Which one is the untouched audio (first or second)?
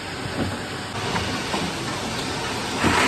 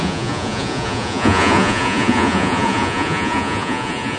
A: first